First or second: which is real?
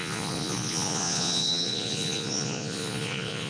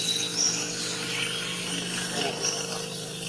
second